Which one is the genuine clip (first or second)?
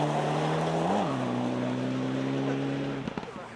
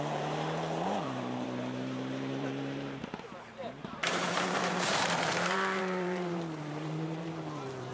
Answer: first